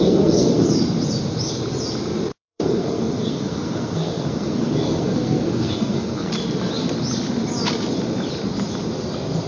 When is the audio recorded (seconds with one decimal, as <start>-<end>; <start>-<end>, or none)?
0.7-2.3; 6.3-9.5